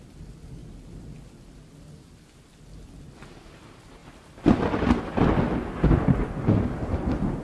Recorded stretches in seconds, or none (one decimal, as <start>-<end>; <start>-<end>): 0.0-7.4